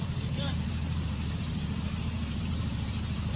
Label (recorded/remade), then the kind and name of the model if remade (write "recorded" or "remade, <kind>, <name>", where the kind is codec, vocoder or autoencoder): remade, vocoder, BigVGAN v2